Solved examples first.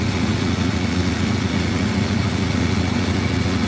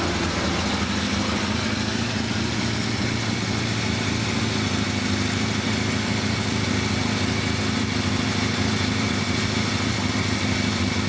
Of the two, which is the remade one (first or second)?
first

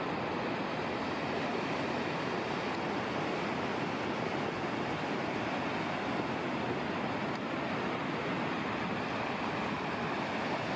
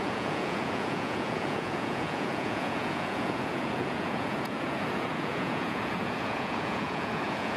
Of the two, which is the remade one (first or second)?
second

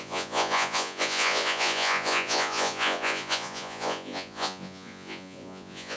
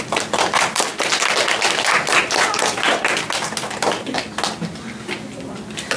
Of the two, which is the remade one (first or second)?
first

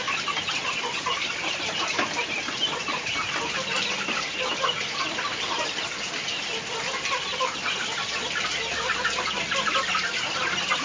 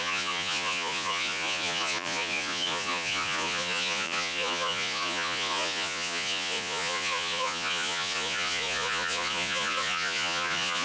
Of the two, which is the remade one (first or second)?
second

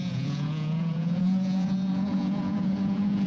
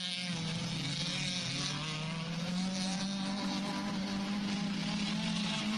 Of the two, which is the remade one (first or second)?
first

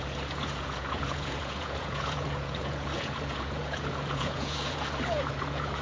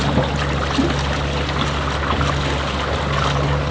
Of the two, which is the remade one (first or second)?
first